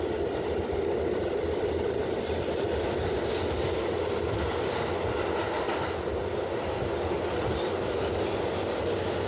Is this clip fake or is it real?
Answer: real